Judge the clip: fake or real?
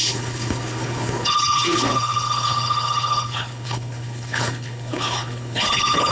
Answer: fake